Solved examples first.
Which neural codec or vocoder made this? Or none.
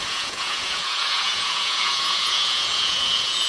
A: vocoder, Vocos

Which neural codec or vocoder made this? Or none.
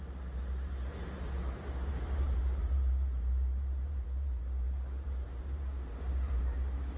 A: vocoder, BigVGAN v2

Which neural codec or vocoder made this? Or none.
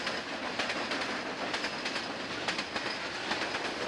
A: none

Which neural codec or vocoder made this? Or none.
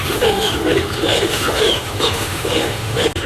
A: autoencoder, DAC-VAE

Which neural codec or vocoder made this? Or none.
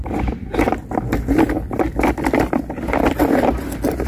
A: none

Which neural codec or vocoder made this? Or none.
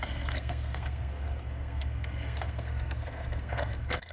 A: codec, SNAC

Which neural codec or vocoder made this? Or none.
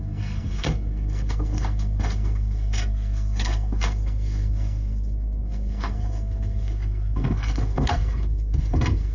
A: codec, SNAC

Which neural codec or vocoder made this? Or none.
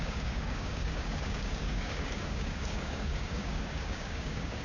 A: codec, DAC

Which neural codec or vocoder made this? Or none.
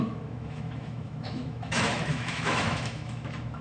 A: autoencoder, DAC-VAE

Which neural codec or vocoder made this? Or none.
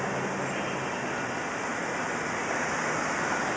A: none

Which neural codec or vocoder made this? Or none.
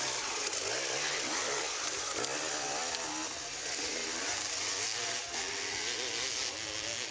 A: none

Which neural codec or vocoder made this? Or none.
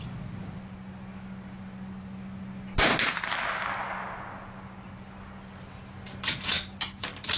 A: none